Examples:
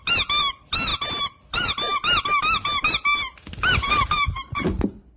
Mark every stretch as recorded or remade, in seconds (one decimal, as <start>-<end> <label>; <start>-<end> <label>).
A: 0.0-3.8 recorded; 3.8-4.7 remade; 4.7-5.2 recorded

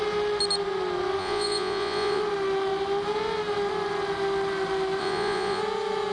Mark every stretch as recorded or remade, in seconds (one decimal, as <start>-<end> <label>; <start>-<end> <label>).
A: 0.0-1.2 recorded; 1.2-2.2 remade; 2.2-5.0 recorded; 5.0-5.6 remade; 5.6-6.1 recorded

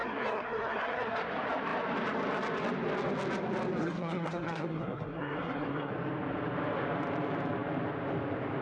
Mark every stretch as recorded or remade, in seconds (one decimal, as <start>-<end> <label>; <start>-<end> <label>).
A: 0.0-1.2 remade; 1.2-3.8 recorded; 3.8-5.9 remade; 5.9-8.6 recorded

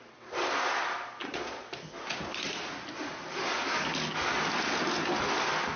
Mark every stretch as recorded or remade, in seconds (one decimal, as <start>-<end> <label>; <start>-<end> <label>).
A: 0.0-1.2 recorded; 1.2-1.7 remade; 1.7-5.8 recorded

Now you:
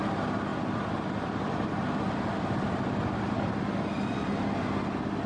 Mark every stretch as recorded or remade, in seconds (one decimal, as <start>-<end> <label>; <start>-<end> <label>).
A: 0.0-5.3 recorded